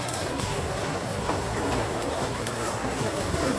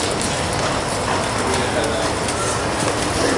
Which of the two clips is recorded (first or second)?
second